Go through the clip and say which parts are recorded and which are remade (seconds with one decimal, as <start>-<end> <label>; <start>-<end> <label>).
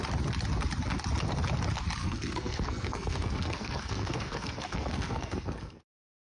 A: 0.0-2.0 recorded; 2.0-5.8 remade; 5.8-6.3 recorded